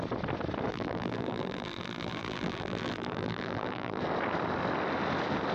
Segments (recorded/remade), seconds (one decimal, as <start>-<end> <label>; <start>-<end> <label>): 0.0-0.7 recorded; 0.7-4.0 remade; 4.0-5.5 recorded